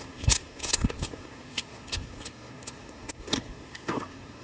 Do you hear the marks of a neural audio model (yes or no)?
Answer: yes